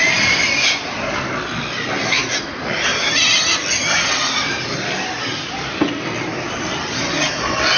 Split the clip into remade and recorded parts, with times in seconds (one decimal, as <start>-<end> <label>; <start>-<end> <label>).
0.0-7.8 recorded